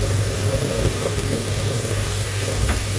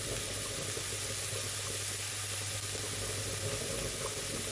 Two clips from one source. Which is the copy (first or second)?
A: first